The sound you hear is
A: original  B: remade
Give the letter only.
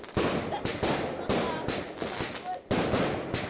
A